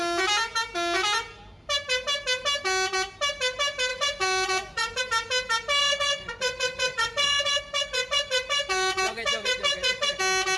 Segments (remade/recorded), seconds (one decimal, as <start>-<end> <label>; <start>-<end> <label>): 0.0-3.9 recorded; 3.9-5.0 remade; 5.0-5.8 recorded; 5.8-10.2 remade; 10.2-10.6 recorded